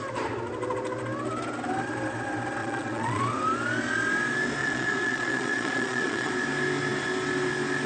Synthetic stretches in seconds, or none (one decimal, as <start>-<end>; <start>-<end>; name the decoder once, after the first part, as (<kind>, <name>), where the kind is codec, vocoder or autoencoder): 2.6-3.2 (vocoder, Vocos); 4.6-6.3

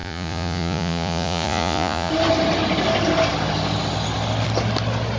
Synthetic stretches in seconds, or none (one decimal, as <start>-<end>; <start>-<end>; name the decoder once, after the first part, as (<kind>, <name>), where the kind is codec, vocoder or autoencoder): 0.0-2.1 (vocoder, Vocos)

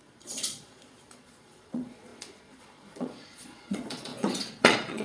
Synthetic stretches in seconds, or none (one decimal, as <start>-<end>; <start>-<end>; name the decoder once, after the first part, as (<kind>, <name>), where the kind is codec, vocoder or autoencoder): 0.0-5.0 (vocoder, Vocos)

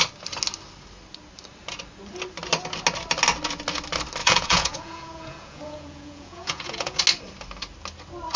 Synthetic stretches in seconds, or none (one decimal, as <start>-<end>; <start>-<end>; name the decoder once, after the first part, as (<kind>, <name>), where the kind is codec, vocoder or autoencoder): 4.2-7.0 (vocoder, Vocos)